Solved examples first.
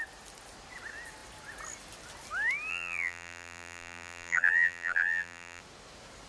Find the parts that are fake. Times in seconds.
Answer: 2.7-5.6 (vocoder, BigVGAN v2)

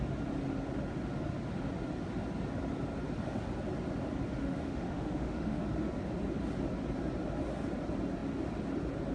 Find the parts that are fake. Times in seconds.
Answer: 4.4-5.6 (autoencoder, DAC-VAE)

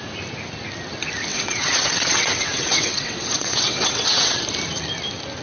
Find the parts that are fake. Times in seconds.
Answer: 1.3-4.4 (vocoder, WaveNeXt)

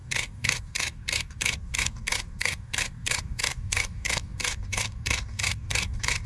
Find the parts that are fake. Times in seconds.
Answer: 0.0-6.3 (codec, DAC)